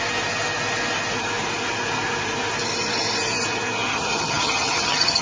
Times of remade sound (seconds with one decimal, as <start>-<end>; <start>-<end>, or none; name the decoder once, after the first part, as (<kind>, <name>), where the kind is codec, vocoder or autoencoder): 3.9-5.2 (vocoder, HiFi-GAN)